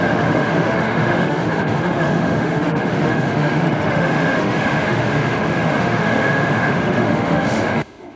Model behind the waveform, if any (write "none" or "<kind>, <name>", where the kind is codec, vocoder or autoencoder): autoencoder, DAC-VAE